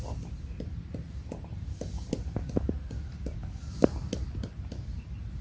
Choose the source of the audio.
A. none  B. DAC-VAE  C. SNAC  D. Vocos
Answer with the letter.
A